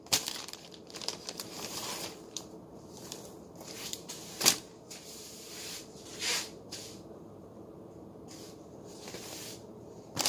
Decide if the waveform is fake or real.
fake